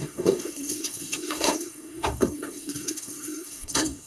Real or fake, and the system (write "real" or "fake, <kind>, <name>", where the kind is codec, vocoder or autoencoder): fake, codec, SNAC